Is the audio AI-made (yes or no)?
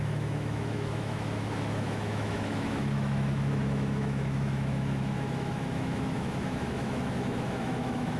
yes